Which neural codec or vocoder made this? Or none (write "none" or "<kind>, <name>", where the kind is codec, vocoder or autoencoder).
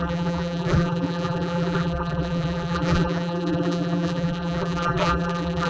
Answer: vocoder, BigVGAN v2